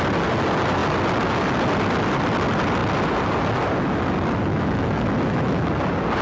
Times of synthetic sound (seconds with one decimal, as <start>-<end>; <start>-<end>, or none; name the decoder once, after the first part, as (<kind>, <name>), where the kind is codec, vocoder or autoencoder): 4.5-5.7 (autoencoder, DAC-VAE)